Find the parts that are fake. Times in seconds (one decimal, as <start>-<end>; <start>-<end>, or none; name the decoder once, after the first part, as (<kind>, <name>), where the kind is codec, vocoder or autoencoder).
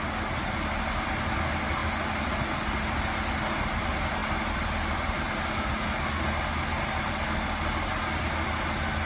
none